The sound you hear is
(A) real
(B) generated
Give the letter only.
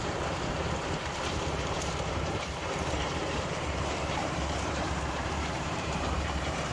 B